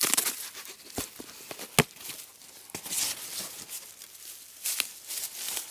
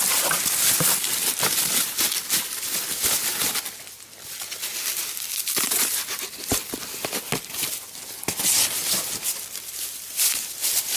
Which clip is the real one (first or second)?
first